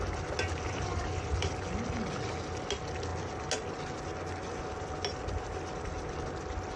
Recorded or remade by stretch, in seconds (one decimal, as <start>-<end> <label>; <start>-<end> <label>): 0.0-6.8 recorded